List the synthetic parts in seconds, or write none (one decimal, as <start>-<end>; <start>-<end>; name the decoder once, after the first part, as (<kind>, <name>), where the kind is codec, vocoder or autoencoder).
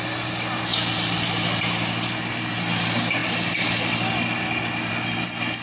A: none